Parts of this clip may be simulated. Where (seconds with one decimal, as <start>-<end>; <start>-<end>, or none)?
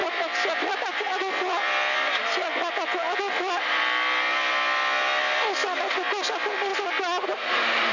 none